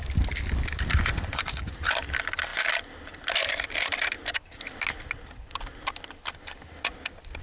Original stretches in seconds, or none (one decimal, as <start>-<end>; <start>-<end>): 0.0-7.4